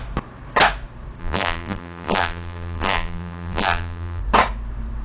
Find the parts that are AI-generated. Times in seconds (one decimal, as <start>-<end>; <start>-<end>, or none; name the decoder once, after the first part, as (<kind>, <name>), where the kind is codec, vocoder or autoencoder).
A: 1.2-4.2 (vocoder, BigVGAN v2)